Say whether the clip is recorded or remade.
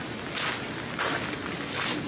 recorded